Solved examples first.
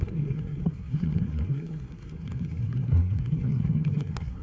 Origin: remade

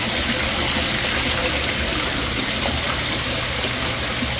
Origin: recorded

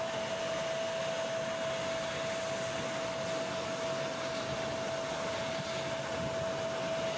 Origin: recorded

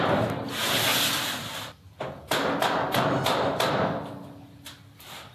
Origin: recorded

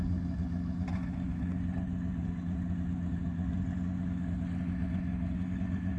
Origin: recorded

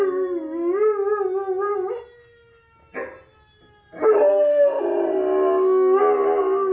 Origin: recorded